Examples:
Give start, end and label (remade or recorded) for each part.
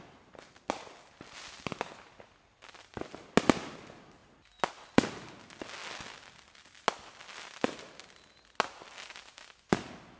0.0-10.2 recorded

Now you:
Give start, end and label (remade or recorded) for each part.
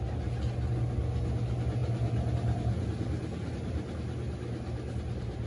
0.0-5.5 recorded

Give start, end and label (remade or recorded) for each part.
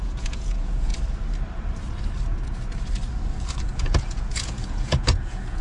0.0-0.9 remade; 0.9-3.6 recorded; 3.6-5.6 remade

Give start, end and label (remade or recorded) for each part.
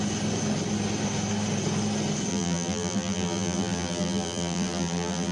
0.0-2.3 recorded; 2.3-5.3 remade